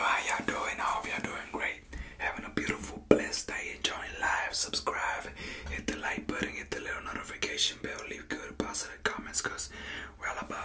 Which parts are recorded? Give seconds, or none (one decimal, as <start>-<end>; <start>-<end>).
0.0-0.9; 1.9-10.6